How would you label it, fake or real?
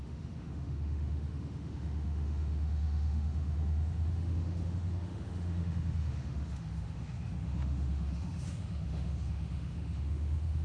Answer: fake